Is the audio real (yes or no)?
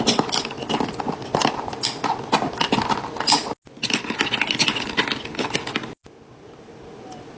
yes